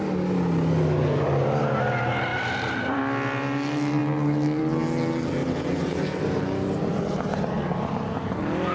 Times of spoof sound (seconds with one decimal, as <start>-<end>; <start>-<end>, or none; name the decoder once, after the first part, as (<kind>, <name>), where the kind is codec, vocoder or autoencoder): 2.3-3.0 (vocoder, BigVGAN v2); 5.4-7.5